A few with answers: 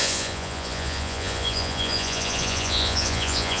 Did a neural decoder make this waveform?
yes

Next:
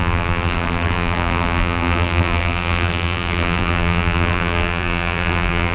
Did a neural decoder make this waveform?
yes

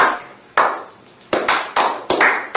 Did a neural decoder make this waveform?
no